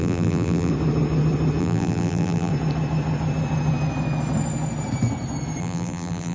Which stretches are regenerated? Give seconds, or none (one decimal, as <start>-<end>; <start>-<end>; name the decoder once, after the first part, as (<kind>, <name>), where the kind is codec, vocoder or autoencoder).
0.0-0.7 (vocoder, BigVGAN v2); 1.6-2.5; 5.6-6.3